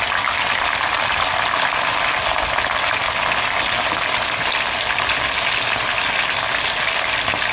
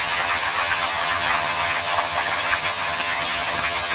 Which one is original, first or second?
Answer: first